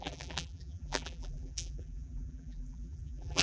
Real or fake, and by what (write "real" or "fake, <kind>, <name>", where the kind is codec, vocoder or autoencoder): fake, vocoder, BigVGAN v2